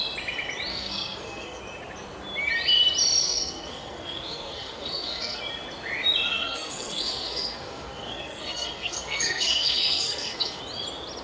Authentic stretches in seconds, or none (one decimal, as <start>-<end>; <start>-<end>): 0.0-0.7; 1.6-3.2; 5.4-6.3; 10.6-11.2